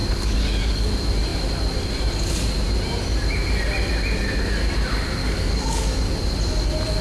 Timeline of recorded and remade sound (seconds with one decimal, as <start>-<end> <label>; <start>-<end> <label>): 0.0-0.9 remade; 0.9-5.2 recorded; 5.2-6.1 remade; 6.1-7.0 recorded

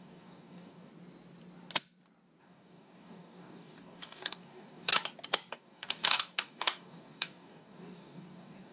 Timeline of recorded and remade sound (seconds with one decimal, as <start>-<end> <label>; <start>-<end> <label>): 0.0-0.9 remade; 0.9-2.4 recorded; 2.4-4.9 remade; 4.9-5.5 recorded; 5.5-8.7 remade

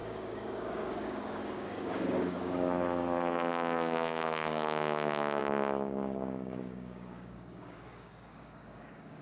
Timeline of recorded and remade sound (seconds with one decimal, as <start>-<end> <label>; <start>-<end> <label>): 0.0-9.2 remade

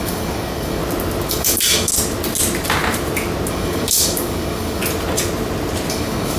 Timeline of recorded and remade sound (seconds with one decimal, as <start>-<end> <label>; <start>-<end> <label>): 0.0-0.8 remade; 0.8-1.3 recorded; 1.3-1.9 remade; 1.9-3.5 recorded; 3.5-4.8 remade; 4.8-5.9 recorded; 5.9-6.4 remade